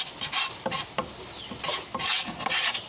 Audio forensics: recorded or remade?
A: recorded